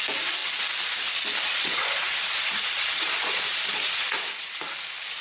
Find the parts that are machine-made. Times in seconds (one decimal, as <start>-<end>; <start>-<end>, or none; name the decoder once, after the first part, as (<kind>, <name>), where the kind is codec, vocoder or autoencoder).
1.5-4.6 (vocoder, Vocos)